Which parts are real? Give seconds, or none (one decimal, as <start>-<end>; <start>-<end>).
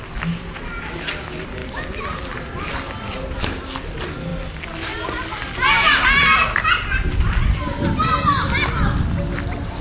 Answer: 0.0-9.8